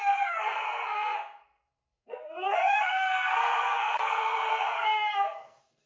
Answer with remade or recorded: remade